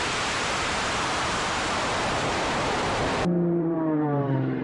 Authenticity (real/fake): fake